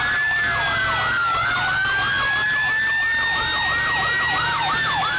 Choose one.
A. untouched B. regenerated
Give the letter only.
A